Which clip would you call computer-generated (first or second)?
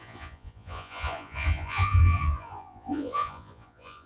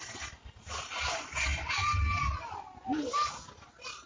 first